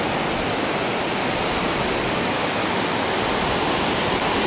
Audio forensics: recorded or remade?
recorded